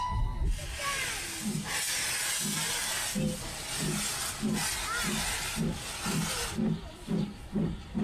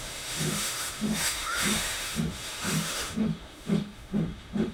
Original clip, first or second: first